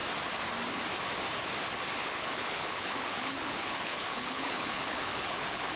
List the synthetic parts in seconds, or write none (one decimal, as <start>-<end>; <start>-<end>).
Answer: 2.0-5.8